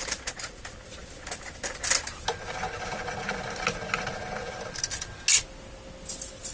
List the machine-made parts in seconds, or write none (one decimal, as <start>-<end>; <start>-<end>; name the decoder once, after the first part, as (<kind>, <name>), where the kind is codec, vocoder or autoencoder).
none